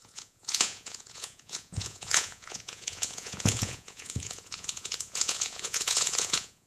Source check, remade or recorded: remade